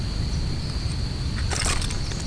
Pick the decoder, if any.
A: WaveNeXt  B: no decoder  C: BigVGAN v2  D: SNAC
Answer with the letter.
B